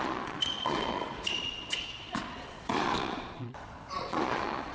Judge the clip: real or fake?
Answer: fake